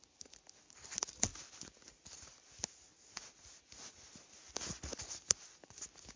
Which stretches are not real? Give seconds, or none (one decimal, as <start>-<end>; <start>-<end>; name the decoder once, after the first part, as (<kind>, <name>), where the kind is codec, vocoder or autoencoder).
none